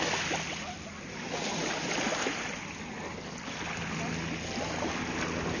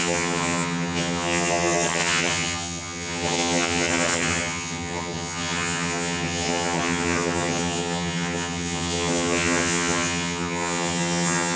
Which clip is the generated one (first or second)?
second